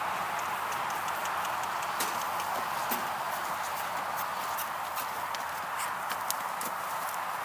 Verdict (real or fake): real